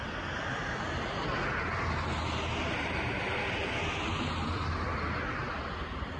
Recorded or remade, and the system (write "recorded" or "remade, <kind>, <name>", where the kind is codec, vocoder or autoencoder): recorded